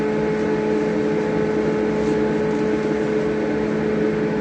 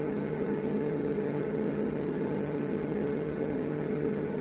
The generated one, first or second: second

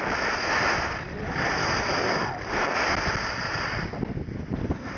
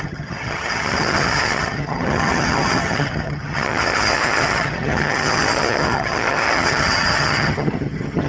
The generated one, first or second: second